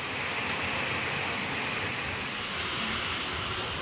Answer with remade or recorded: recorded